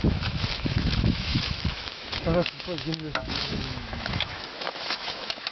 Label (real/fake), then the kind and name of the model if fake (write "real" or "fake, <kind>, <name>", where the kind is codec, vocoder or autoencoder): fake, autoencoder, DAC-VAE